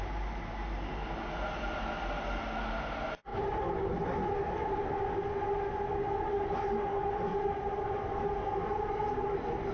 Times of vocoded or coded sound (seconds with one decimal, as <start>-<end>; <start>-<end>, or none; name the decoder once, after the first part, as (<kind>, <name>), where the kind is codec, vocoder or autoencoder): 3.3-3.8 (vocoder, BigVGAN v2); 7.3-8.2